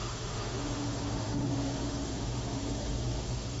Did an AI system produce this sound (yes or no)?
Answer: yes